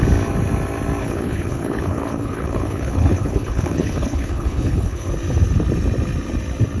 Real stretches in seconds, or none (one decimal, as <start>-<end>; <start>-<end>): 0.0-1.0; 5.1-6.8